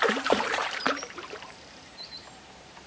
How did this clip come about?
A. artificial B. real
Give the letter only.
A